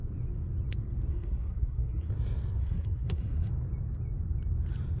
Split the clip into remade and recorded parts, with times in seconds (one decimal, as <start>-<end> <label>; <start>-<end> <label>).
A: 0.0-1.1 recorded; 1.1-2.1 remade; 2.1-2.6 recorded; 2.6-3.5 remade; 3.5-5.0 recorded